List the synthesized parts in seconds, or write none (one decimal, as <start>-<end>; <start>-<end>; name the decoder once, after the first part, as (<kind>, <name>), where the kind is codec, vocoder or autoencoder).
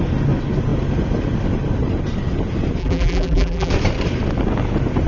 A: 2.8-3.7 (vocoder, BigVGAN v2)